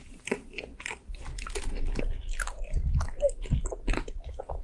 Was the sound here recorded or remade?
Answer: recorded